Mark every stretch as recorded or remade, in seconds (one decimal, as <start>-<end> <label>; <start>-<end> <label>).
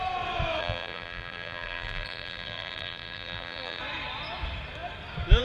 0.0-0.6 recorded; 0.6-3.8 remade; 3.8-5.4 recorded